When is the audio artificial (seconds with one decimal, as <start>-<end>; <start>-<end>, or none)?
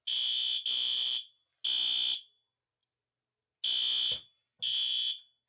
1.1-1.6